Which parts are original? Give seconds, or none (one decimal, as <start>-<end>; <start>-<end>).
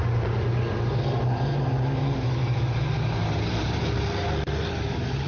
0.0-5.3